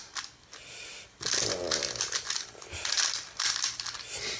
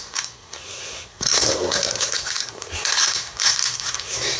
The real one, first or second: first